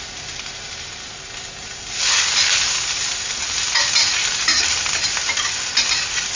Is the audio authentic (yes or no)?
yes